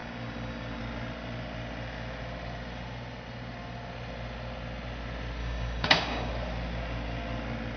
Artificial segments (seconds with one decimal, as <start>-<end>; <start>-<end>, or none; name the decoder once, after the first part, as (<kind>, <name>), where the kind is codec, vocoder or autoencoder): 0.0-0.8 (codec, DAC); 5.4-6.3